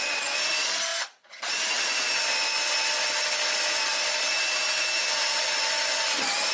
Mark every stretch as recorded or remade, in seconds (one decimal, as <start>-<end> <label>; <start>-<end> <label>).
0.0-6.5 recorded